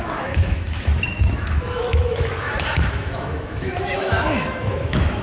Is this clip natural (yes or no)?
no